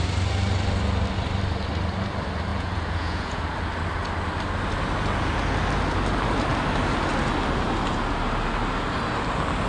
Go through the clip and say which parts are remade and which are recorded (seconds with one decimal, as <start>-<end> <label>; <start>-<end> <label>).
0.0-2.5 recorded; 2.5-3.4 remade; 3.4-9.7 recorded